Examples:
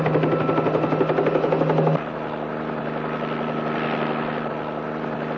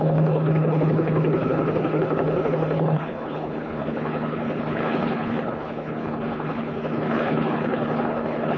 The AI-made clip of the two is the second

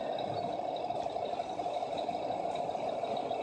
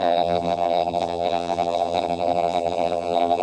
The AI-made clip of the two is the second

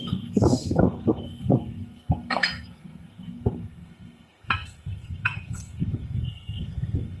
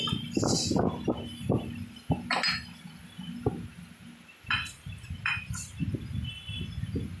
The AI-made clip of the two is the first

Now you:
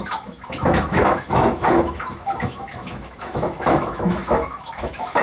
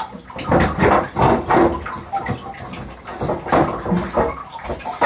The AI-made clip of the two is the first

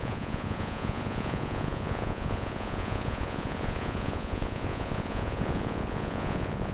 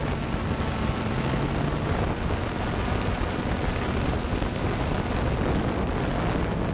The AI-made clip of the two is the first